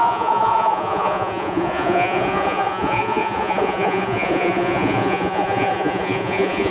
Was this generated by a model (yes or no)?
yes